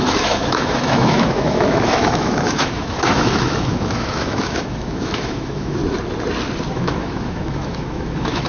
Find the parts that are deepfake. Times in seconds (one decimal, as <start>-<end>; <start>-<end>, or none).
0.0-5.8; 6.7-8.5